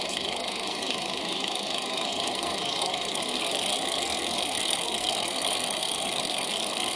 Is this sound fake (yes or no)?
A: yes